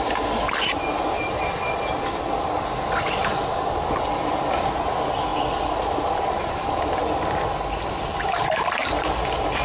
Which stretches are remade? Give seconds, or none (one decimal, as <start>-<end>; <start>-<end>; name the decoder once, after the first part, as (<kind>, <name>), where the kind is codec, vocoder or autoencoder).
none